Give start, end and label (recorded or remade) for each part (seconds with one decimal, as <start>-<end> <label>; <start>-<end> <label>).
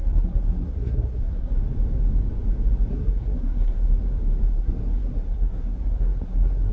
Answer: 0.0-1.6 remade; 1.6-2.9 recorded; 2.9-3.9 remade; 3.9-4.5 recorded; 4.5-6.7 remade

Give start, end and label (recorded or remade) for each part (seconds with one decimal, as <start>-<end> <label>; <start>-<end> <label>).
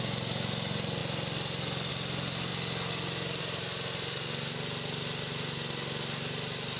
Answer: 0.0-6.8 recorded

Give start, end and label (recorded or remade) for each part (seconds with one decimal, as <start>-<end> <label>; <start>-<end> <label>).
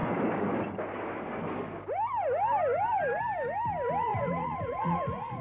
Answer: 0.0-4.1 recorded; 4.1-5.4 remade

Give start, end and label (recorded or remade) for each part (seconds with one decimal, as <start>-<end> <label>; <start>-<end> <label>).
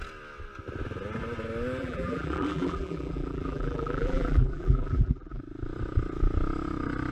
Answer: 0.0-1.8 recorded; 1.8-5.4 remade; 5.4-7.1 recorded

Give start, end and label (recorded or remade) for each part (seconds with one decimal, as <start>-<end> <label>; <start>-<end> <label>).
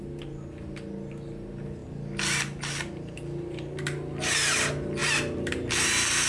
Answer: 0.0-6.3 recorded